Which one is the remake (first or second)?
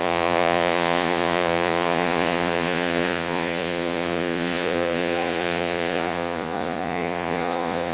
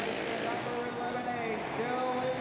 first